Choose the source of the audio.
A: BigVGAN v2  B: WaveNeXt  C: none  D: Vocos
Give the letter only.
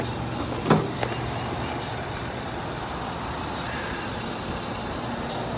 C